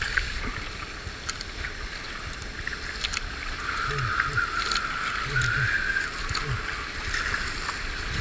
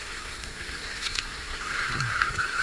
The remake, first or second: second